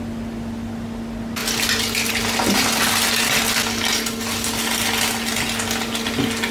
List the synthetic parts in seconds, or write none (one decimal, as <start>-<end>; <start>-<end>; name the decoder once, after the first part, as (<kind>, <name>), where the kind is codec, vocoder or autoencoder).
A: none